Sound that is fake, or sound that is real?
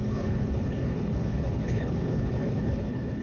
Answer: fake